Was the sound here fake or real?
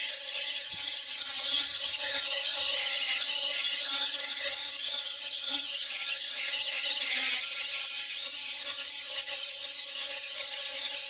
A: fake